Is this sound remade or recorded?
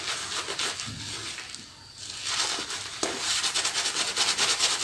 recorded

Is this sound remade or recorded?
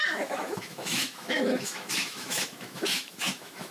remade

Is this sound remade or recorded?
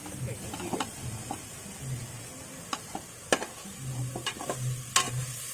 recorded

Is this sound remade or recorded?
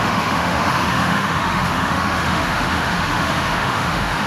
remade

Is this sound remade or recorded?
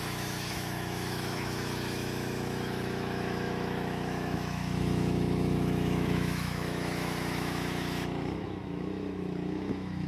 remade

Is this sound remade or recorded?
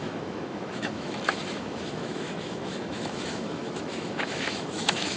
remade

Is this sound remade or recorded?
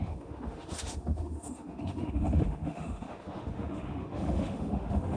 remade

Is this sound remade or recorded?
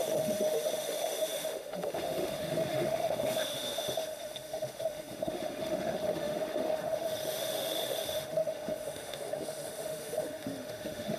remade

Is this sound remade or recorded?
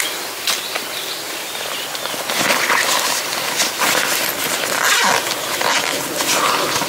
recorded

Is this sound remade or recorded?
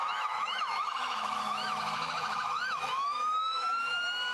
remade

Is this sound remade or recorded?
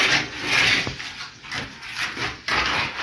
recorded